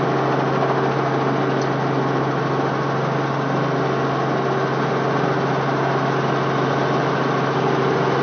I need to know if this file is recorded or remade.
recorded